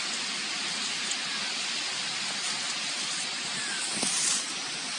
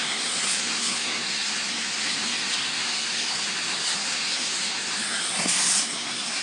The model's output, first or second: second